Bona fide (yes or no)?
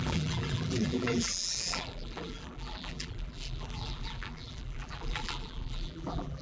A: no